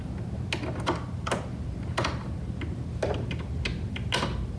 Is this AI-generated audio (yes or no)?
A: no